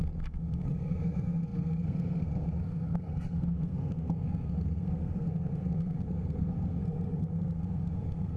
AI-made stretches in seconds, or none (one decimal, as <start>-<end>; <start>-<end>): 0.0-8.4